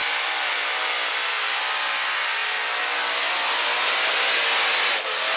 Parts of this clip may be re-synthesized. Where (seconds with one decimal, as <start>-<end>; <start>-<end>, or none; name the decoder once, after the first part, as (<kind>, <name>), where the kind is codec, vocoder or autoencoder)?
none